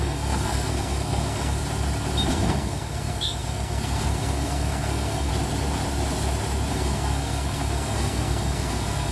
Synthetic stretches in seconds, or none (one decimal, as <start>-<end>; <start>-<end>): 0.0-1.6; 2.3-5.3; 6.7-9.1